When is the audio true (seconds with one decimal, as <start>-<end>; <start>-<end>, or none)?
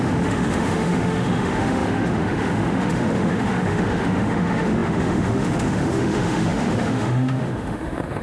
none